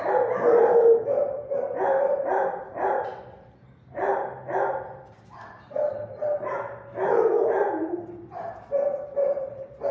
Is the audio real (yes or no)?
no